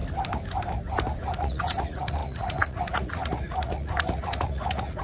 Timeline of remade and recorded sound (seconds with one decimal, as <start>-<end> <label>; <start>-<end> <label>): 0.0-1.2 recorded; 1.2-5.0 remade

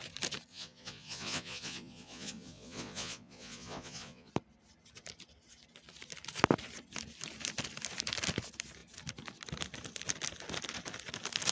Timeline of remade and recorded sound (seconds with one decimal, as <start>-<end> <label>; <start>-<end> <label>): 0.0-0.5 recorded; 0.5-4.3 remade; 4.3-11.5 recorded

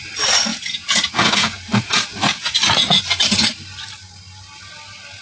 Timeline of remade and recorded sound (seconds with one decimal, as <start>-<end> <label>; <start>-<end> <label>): 0.0-0.5 recorded; 0.5-3.0 remade; 3.0-5.2 recorded

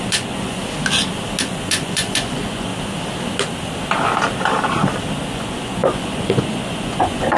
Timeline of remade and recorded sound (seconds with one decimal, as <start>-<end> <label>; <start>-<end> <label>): 0.0-0.6 remade; 0.6-1.4 recorded; 1.4-2.7 remade; 2.7-5.3 recorded; 5.3-7.4 remade

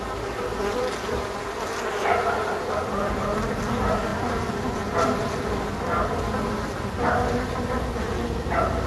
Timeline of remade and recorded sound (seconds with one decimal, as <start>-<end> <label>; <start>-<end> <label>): 0.0-8.9 recorded

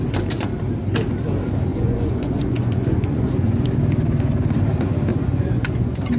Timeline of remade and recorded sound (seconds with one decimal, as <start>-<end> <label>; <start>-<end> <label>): 0.0-1.7 recorded; 1.7-3.7 remade; 3.7-5.1 recorded; 5.1-6.2 remade